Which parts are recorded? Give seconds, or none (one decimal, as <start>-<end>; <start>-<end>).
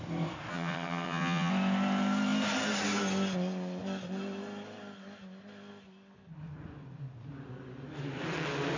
0.0-0.5; 1.5-8.8